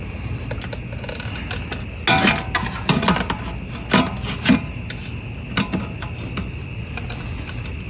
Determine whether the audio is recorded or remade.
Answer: recorded